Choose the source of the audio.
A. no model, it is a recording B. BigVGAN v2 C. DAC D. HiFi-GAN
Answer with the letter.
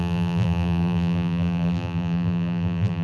B